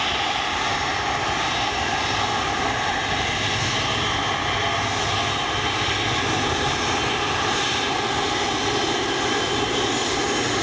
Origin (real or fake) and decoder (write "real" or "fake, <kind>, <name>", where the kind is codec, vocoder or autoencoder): real